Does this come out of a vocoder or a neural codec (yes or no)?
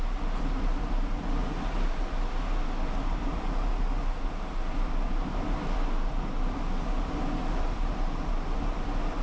no